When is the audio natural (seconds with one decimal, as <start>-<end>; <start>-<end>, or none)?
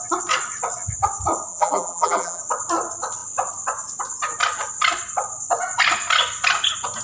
0.0-1.5; 2.4-7.0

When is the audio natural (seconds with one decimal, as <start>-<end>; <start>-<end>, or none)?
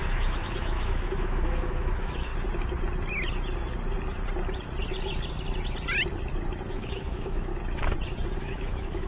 2.3-6.7; 7.5-8.4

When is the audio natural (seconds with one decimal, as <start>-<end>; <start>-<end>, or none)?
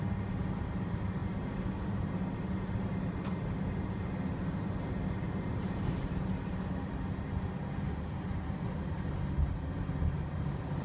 0.0-10.8